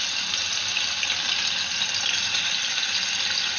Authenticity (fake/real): real